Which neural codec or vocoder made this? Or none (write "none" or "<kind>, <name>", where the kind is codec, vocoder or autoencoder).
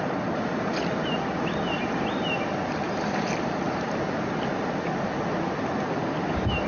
none